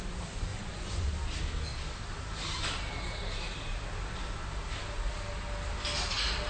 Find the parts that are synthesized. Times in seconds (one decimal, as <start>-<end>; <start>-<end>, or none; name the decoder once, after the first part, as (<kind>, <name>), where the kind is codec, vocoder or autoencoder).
0.5-1.1 (vocoder, Vocos)